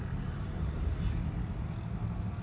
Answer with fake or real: real